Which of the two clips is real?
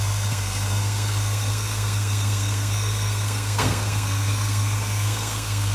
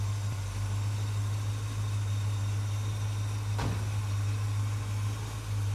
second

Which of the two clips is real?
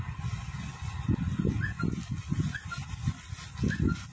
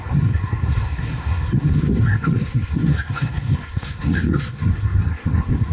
first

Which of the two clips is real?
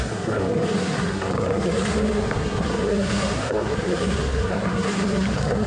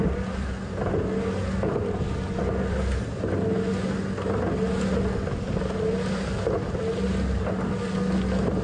second